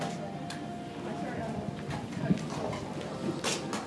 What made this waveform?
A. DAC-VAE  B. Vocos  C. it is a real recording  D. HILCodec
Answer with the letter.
C